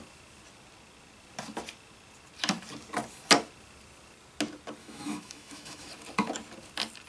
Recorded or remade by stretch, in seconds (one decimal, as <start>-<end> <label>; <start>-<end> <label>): 0.0-4.8 recorded; 4.8-5.9 remade; 5.9-7.1 recorded